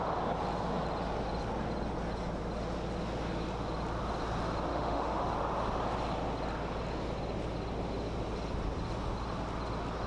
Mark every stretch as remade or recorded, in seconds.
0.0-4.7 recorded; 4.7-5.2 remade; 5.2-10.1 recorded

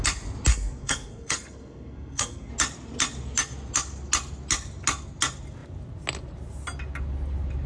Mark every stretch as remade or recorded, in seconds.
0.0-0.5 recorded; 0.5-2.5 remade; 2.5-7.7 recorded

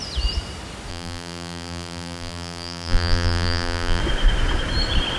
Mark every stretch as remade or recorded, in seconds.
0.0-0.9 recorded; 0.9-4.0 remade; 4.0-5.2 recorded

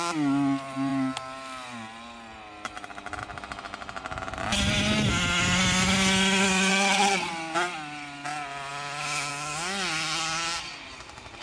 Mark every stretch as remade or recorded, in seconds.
0.0-6.7 recorded; 6.7-7.3 remade; 7.3-11.4 recorded

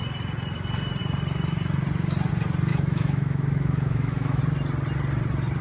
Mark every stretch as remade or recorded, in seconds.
0.0-2.7 recorded; 2.7-4.4 remade; 4.4-5.6 recorded